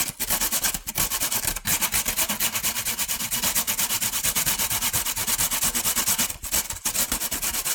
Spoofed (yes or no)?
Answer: no